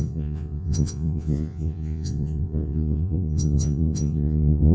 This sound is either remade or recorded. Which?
remade